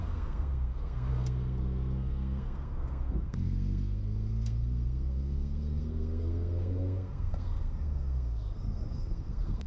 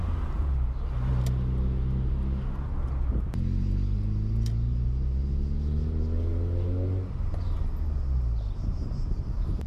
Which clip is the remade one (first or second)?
first